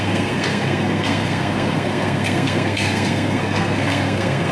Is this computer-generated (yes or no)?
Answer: yes